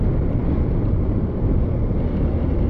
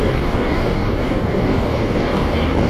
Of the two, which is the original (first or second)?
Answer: first